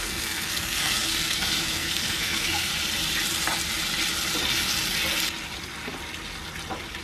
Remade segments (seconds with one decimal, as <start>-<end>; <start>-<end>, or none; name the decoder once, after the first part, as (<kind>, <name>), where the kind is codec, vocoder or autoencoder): 0.0-2.7 (codec, SNAC)